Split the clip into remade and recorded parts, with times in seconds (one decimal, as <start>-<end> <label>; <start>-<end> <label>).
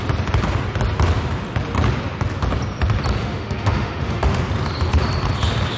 0.0-3.2 recorded; 3.2-4.4 remade; 4.4-5.8 recorded